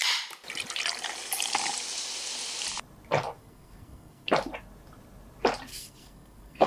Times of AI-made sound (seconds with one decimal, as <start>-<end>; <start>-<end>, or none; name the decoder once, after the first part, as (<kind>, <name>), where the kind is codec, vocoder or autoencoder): 3.4-4.3 (codec, SNAC); 5.7-6.7